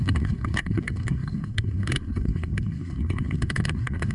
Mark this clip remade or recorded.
remade